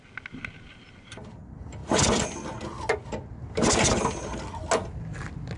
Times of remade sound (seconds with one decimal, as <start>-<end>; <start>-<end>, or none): none